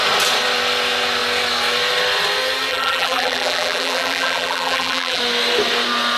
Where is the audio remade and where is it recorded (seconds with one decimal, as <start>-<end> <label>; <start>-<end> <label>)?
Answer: 0.0-2.7 recorded; 2.7-5.2 remade; 5.2-6.2 recorded